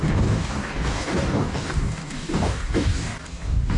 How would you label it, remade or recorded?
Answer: remade